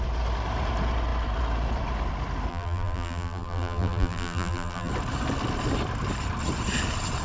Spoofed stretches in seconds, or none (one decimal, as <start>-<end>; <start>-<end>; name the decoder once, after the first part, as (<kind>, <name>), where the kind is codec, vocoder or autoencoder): 2.5-4.9 (vocoder, BigVGAN v2)